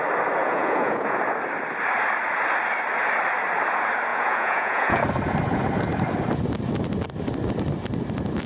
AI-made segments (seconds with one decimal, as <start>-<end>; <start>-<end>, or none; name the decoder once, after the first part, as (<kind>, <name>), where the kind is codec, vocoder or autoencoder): 0.4-1.2 (vocoder, Vocos); 4.1-5.0